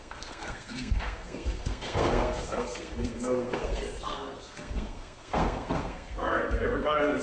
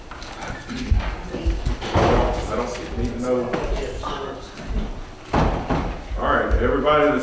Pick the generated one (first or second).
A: first